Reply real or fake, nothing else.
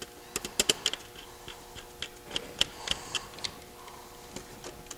real